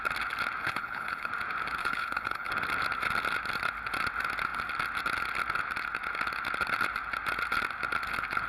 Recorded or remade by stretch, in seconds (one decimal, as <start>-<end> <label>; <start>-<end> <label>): 0.0-0.6 recorded; 0.6-1.3 remade; 1.3-1.8 recorded; 1.8-2.5 remade; 2.5-8.5 recorded